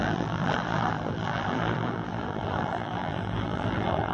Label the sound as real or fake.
fake